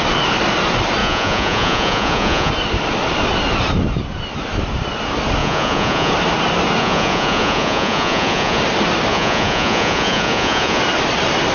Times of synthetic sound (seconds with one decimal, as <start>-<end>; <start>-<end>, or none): 1.0-2.5; 5.4-6.1; 6.8-8.6; 9.1-10.8